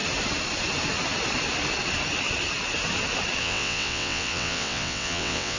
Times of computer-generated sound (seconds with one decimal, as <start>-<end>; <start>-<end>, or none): 3.4-5.6